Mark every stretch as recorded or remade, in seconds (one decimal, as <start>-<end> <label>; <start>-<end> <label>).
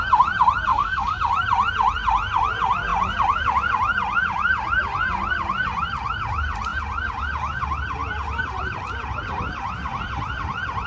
0.0-0.7 recorded; 0.7-1.2 remade; 1.2-10.9 recorded